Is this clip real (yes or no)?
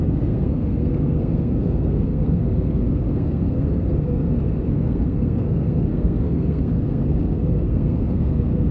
no